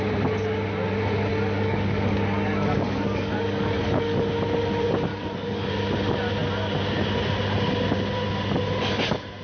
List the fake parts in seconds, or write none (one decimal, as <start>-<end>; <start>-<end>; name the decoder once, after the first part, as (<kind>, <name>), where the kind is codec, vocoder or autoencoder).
1.3-4.3 (codec, DAC); 5.1-5.7

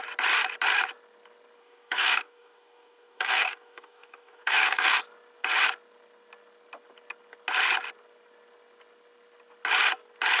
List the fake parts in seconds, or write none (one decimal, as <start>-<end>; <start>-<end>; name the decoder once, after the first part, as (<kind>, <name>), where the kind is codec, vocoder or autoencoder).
1.6-5.0 (codec, DAC)

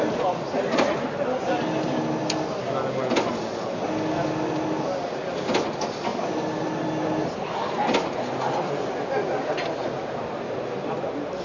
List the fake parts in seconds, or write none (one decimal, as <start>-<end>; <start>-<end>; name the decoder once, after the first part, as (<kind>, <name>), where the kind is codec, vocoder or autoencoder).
none